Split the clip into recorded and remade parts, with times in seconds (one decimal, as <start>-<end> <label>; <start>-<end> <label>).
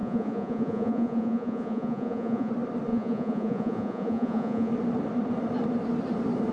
0.0-2.5 remade; 2.5-2.9 recorded; 2.9-4.7 remade; 4.7-6.5 recorded